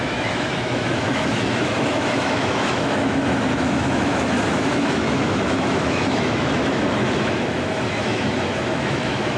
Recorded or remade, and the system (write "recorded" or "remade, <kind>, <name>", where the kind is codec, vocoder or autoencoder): remade, autoencoder, DAC-VAE